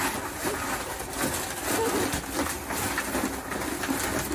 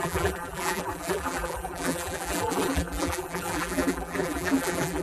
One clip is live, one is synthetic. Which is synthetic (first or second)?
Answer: second